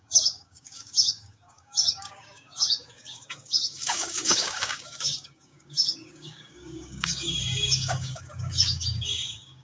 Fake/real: fake